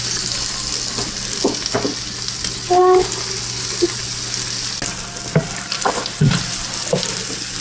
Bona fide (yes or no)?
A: yes